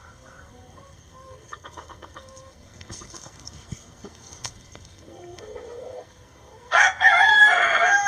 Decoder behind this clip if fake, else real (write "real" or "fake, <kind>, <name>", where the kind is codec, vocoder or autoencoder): fake, codec, SNAC